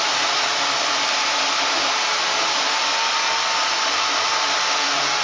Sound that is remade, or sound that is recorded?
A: recorded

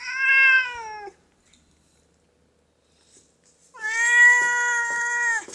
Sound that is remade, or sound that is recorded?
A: recorded